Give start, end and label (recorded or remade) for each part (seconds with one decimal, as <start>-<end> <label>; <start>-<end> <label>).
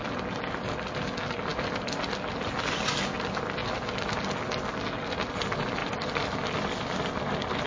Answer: 0.0-5.8 recorded; 5.8-7.2 remade; 7.2-7.7 recorded